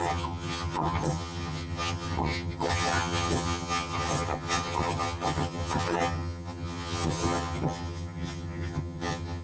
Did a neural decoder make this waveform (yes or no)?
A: yes